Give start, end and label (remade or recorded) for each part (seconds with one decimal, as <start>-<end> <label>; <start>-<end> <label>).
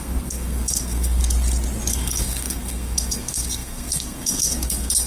0.0-1.2 remade; 1.2-1.9 recorded; 1.9-5.1 remade